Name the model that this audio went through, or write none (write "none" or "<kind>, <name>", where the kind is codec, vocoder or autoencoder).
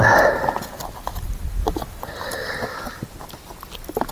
none